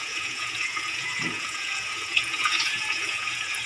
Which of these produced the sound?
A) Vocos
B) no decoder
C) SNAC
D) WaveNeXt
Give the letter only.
A